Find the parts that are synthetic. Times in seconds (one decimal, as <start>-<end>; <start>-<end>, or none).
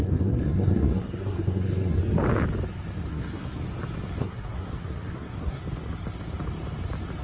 0.0-2.0; 3.1-3.6; 4.2-5.6